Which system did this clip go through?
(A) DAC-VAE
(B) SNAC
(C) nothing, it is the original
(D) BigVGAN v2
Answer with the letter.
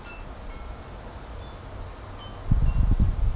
C